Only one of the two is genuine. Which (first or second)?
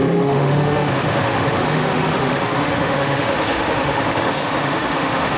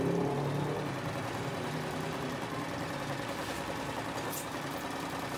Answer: second